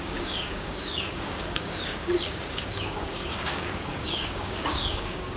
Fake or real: fake